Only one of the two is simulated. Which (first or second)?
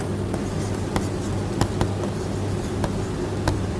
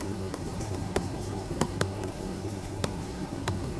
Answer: second